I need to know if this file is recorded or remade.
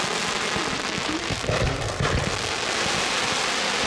recorded